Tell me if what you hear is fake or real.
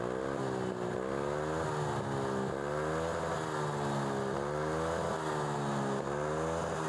real